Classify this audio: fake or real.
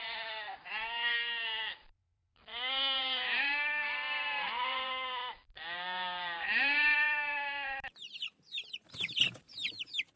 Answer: fake